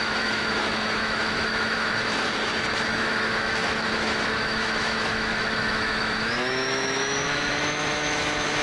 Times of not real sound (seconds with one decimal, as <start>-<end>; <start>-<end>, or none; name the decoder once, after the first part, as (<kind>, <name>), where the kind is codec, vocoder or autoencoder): 0.0-2.1 (autoencoder, DAC-VAE); 3.0-8.6